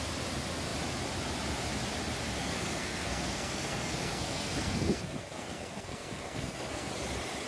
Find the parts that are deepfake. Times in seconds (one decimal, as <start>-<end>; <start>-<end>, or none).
2.4-6.9